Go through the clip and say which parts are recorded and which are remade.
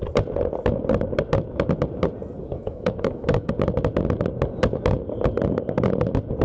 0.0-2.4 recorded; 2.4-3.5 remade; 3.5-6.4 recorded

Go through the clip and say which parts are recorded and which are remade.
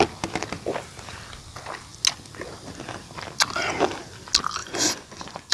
0.0-4.6 recorded; 4.6-5.5 remade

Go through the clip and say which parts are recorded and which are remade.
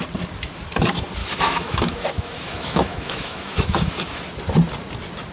0.0-1.2 recorded; 1.2-4.2 remade; 4.2-5.3 recorded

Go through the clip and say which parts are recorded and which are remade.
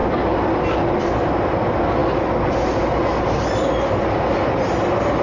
0.0-5.2 recorded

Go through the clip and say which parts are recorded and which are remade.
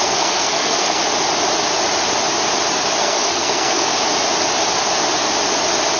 0.0-1.0 remade; 1.0-3.0 recorded; 3.0-3.9 remade; 3.9-6.0 recorded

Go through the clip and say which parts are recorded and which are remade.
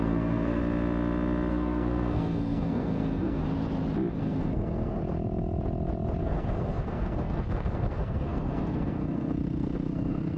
0.0-0.6 remade; 0.6-1.5 recorded; 1.5-3.4 remade; 3.4-4.2 recorded; 4.2-5.0 remade; 5.0-6.2 recorded; 6.2-10.4 remade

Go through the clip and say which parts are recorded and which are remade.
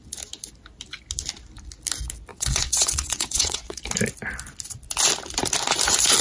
0.0-2.3 recorded; 2.3-3.8 remade; 3.8-6.2 recorded